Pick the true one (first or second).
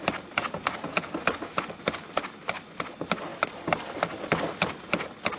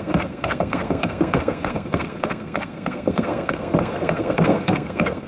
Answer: first